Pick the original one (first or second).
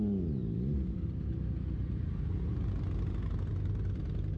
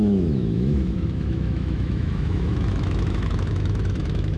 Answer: first